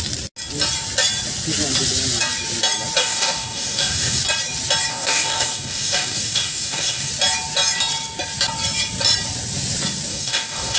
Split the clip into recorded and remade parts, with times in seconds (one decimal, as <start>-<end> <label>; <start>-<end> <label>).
0.0-3.0 recorded; 3.0-4.2 remade; 4.2-4.9 recorded; 4.9-7.1 remade; 7.1-10.1 recorded; 10.1-10.8 remade